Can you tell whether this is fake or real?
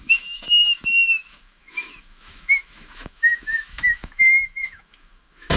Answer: fake